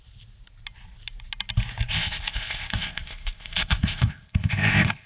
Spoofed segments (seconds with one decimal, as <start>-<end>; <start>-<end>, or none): 1.9-5.1